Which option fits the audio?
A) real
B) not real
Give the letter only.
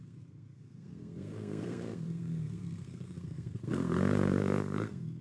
B